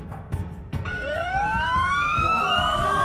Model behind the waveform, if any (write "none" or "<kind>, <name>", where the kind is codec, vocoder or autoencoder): codec, SNAC